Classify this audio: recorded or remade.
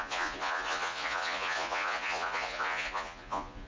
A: remade